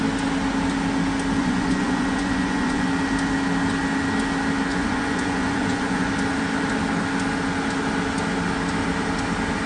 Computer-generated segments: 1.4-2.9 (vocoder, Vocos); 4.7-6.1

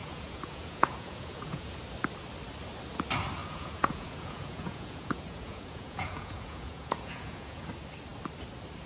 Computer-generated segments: 0.0-1.8 (vocoder, Vocos); 3.4-7.7

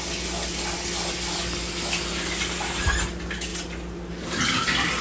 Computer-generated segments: none

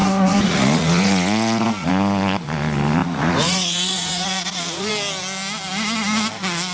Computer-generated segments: 0.0-1.9 (vocoder, Vocos); 3.0-4.9

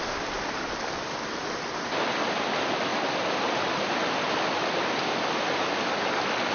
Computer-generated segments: none

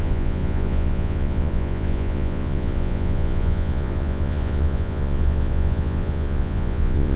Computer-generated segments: 0.0-7.2 (vocoder, Vocos)